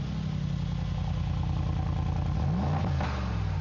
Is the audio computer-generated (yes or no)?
no